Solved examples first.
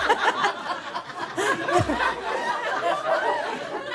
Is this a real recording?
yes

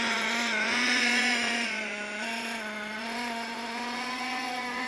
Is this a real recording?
no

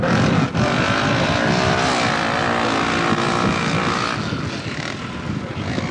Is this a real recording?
yes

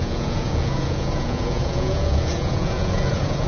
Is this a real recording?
no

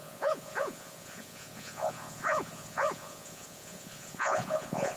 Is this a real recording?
no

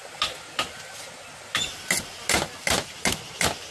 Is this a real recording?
yes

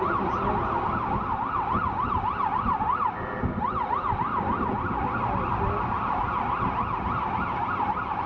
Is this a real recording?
yes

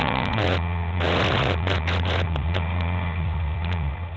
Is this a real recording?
no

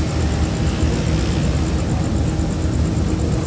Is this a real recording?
yes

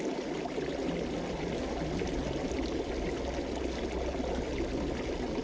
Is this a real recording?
yes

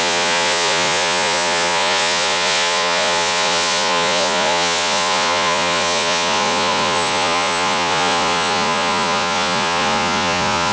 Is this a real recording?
no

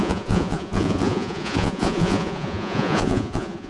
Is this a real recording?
no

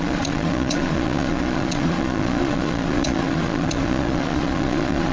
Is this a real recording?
no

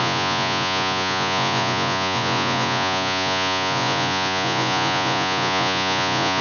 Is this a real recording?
no